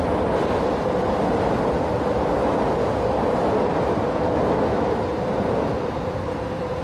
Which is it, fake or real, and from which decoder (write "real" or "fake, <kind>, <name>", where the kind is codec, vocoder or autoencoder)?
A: real